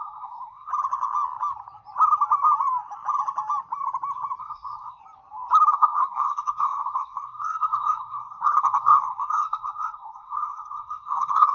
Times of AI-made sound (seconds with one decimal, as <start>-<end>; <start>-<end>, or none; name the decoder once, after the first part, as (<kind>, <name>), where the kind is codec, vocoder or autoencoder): 0.0-0.7 (codec, SNAC); 4.4-5.0; 5.7-11.5